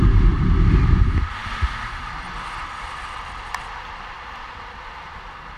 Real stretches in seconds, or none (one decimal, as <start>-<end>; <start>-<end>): 0.0-5.6